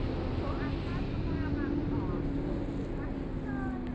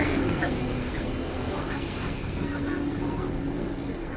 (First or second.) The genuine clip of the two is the first